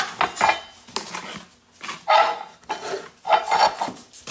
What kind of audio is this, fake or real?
real